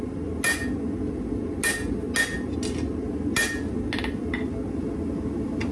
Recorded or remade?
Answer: recorded